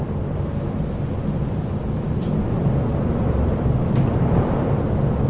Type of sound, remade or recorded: recorded